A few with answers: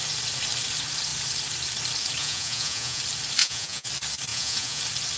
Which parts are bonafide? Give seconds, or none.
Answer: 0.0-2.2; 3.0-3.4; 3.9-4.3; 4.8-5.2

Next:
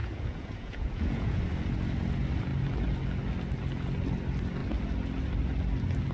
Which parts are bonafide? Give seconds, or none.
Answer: 1.4-6.1

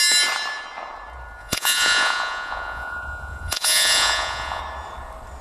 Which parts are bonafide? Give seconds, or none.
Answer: 0.0-1.4; 4.6-5.4